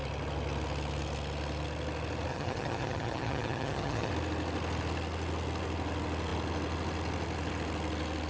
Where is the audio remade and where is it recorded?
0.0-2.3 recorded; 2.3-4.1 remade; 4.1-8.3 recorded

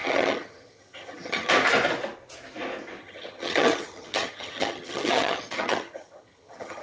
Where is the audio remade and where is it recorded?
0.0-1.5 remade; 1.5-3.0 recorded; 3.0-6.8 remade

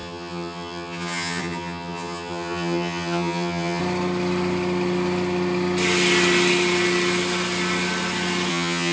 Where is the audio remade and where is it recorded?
0.0-3.8 remade; 3.8-8.5 recorded; 8.5-8.9 remade

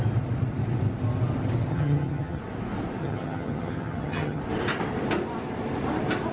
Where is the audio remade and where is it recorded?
0.0-1.7 recorded; 1.7-2.4 remade; 2.4-3.0 recorded; 3.0-4.4 remade; 4.4-6.3 recorded